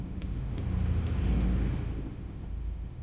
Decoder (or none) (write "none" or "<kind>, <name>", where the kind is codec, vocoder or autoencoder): autoencoder, DAC-VAE